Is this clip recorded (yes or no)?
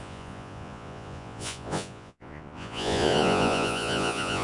no